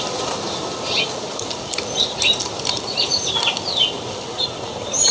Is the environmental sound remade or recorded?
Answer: recorded